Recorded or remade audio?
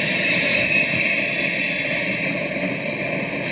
recorded